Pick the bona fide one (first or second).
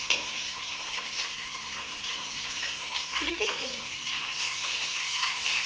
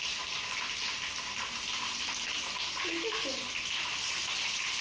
second